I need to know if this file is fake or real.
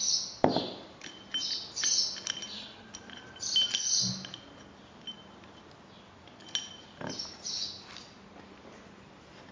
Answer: real